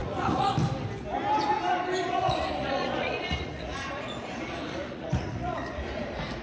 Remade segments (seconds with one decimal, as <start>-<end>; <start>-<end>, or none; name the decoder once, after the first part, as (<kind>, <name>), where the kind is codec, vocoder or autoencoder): 0.0-0.5 (vocoder, Vocos); 2.1-5.8